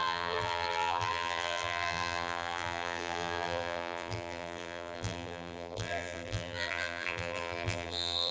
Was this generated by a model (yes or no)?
yes